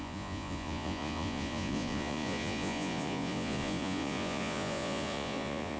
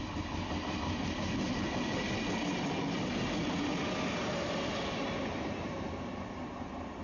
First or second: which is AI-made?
first